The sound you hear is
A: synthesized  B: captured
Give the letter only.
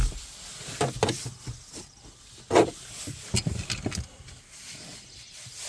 B